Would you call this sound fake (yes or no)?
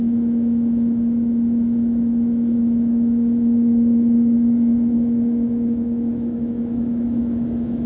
yes